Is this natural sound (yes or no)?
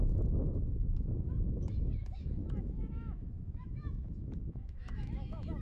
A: no